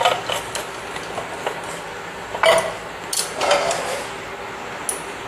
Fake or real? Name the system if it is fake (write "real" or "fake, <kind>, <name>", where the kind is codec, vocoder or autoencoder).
real